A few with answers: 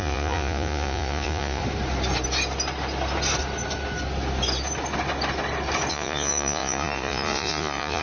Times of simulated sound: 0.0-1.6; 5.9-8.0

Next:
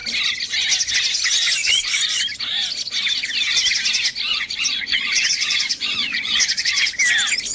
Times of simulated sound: 1.6-2.2; 4.3-6.9

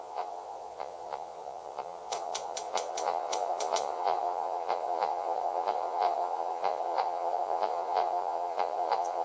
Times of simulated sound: 0.0-9.2